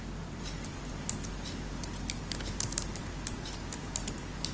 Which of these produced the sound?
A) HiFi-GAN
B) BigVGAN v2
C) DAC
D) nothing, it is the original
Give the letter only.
D